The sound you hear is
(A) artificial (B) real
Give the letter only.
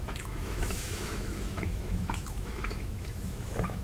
A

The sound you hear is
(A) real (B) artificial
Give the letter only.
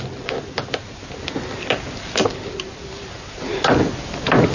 A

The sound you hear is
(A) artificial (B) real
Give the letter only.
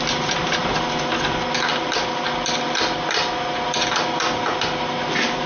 B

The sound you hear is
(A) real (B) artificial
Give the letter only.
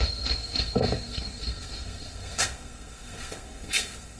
B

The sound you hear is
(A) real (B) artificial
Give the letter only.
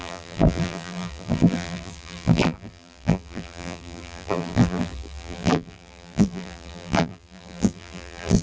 B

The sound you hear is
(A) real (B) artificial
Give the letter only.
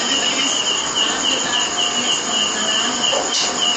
A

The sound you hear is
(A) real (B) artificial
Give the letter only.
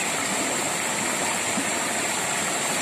A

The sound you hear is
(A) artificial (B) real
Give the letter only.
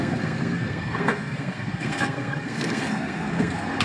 A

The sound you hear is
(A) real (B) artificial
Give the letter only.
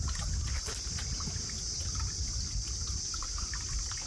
A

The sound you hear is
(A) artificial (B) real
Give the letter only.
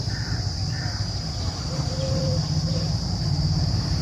A